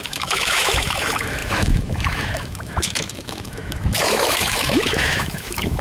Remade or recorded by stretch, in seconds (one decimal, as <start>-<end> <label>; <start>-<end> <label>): 0.0-5.8 remade